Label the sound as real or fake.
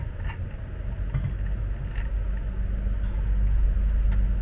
real